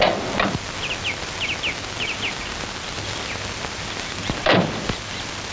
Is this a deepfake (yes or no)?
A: no